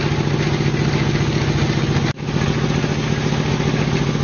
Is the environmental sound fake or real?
real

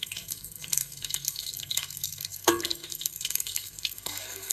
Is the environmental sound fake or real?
fake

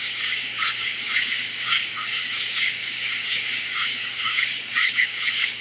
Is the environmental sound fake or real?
fake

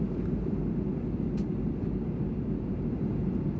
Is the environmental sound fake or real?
real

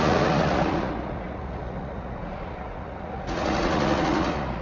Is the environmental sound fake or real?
fake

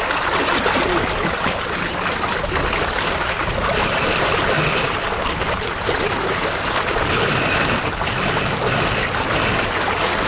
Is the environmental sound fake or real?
real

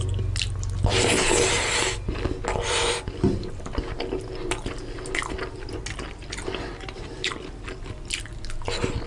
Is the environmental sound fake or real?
real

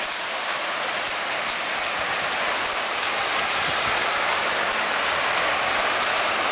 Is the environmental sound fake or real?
real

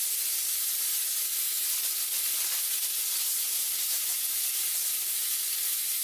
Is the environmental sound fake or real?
real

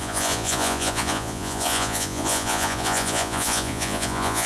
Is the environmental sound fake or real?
fake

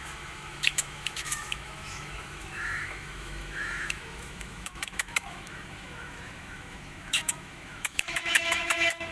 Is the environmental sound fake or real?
fake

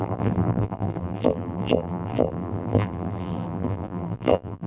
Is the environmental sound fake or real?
fake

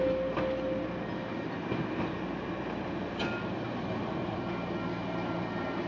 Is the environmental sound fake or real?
real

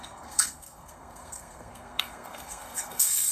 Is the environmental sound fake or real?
fake